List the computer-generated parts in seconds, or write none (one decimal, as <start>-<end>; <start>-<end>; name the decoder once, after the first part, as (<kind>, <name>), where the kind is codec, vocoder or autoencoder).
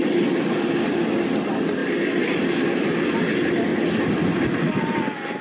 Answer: none